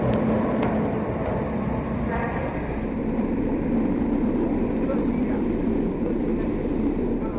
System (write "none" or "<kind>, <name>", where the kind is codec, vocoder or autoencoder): vocoder, BigVGAN v2